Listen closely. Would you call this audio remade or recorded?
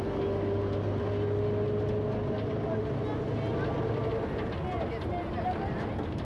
recorded